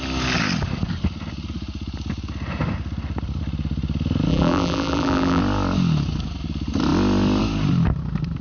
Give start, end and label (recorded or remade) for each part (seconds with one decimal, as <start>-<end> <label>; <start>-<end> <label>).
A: 0.0-4.3 recorded; 4.3-5.4 remade; 5.4-8.4 recorded